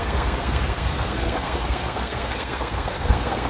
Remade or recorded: remade